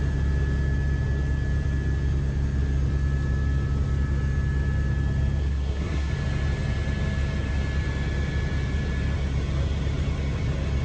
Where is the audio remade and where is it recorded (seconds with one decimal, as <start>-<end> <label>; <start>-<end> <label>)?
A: 0.0-5.4 recorded; 5.4-6.1 remade; 6.1-10.8 recorded